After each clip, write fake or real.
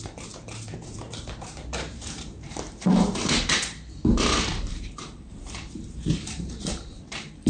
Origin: fake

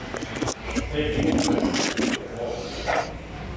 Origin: real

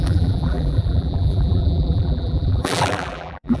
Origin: fake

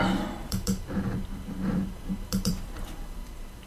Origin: fake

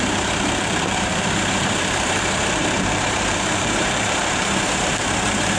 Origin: fake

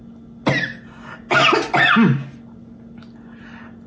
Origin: real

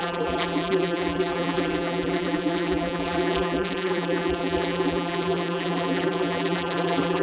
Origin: fake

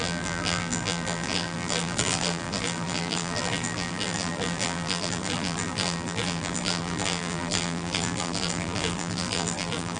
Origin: fake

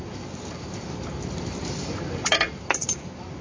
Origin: fake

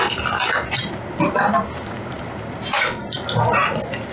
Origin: fake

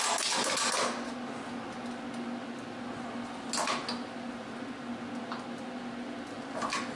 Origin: real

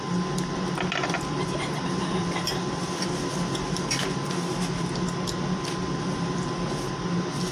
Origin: fake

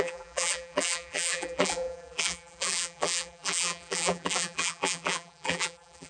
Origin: fake